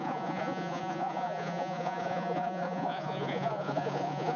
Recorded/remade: remade